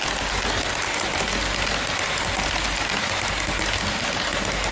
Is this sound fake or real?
real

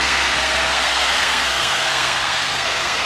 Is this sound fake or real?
fake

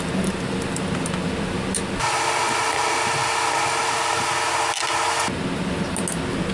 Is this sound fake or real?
real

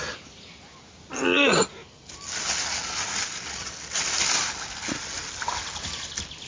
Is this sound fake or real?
real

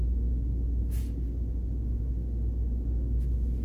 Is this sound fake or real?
real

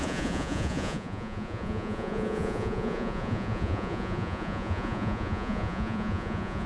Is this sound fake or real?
fake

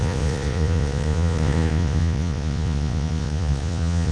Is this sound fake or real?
fake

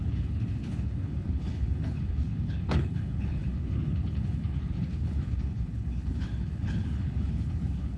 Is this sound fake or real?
fake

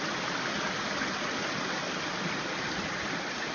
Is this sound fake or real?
real